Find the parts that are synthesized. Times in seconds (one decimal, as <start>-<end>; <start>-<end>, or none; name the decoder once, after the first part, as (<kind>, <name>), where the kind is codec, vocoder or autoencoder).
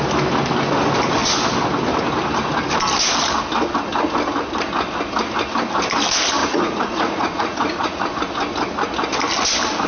6.4-8.1 (vocoder, Vocos)